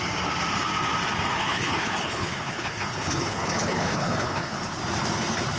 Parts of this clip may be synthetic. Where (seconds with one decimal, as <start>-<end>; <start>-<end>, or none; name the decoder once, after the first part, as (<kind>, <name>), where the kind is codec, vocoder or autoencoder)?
1.4-4.8 (codec, HILCodec)